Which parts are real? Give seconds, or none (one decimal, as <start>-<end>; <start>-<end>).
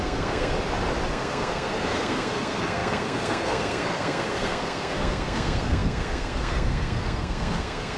0.5-1.1